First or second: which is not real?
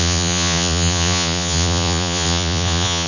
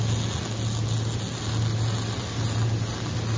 first